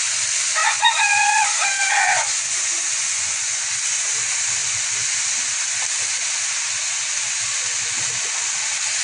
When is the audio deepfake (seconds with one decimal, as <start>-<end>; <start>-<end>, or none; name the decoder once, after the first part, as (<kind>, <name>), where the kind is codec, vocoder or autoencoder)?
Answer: 0.6-3.6 (vocoder, Vocos)